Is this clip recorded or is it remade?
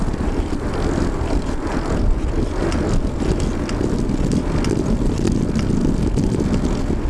recorded